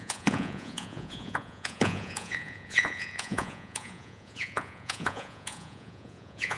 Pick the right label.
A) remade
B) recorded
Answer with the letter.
A